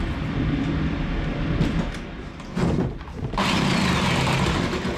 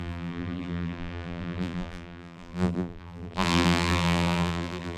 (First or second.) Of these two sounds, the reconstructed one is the second